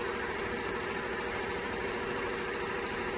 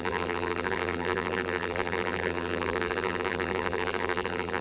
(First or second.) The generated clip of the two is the second